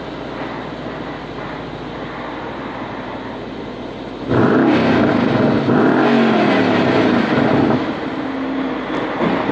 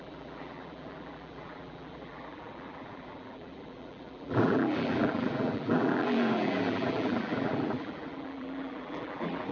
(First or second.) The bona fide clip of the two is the first